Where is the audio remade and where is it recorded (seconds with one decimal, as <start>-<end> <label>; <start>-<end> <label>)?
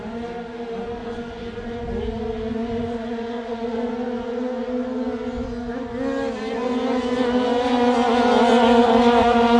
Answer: 0.0-1.0 recorded; 1.0-1.8 remade; 1.8-2.6 recorded; 2.6-3.9 remade; 3.9-8.8 recorded; 8.8-9.6 remade